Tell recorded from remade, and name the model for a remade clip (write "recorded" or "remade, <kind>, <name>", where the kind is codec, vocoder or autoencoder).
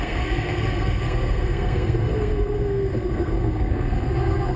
remade, codec, SNAC